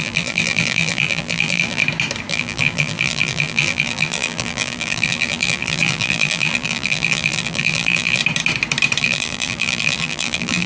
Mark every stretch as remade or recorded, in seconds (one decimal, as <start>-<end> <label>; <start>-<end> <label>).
0.0-1.8 remade; 1.8-2.3 recorded; 2.3-8.2 remade; 8.2-9.0 recorded; 9.0-10.7 remade